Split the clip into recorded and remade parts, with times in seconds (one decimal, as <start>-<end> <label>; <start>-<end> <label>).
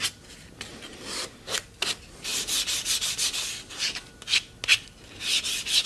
0.0-0.7 recorded; 0.7-1.6 remade; 1.6-2.3 recorded; 2.3-3.7 remade; 3.7-5.9 recorded